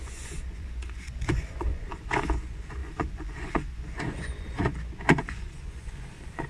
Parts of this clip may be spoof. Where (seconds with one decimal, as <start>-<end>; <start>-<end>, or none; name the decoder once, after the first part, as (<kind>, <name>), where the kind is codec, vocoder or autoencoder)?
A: 0.0-6.5 (vocoder, Vocos)

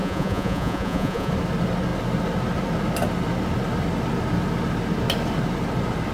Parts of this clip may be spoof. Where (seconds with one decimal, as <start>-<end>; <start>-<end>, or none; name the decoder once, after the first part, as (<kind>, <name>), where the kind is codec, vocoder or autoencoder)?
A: 0.0-1.3 (vocoder, Vocos)

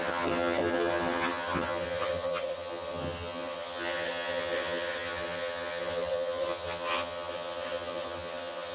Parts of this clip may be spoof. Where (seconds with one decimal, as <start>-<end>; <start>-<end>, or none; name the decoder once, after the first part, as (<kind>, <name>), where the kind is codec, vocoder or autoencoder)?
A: 0.0-8.7 (vocoder, HiFi-GAN)

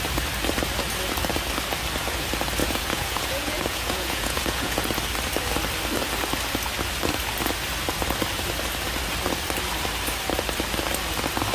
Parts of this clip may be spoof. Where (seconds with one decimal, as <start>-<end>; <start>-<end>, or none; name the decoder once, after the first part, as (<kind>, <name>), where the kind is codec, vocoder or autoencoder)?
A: 2.6-4.9 (vocoder, Vocos)

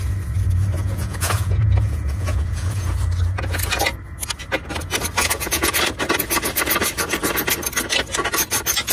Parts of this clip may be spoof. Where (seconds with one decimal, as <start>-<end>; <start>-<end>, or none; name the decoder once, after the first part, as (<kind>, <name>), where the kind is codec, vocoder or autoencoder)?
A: 0.8-2.9 (vocoder, Vocos); 5.2-5.7

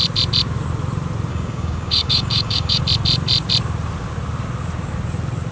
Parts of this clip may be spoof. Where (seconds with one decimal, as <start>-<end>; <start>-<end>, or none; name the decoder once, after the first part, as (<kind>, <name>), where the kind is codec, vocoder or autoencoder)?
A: 1.3-2.8 (codec, DAC)

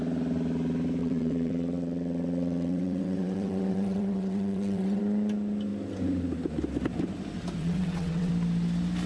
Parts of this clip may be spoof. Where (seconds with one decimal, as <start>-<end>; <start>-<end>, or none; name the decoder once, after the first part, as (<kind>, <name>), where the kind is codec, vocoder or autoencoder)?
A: 1.0-5.0 (vocoder, WaveNeXt); 7.6-8.3

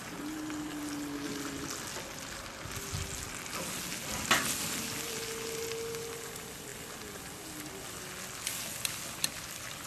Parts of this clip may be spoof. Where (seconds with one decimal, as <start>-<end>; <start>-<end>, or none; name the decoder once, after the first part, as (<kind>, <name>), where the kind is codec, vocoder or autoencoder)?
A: none